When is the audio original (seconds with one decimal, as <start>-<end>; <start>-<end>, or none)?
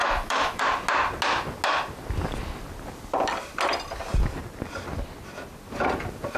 0.6-6.4